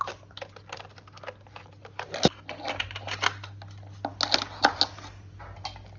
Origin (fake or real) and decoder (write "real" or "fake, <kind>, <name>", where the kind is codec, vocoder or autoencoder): real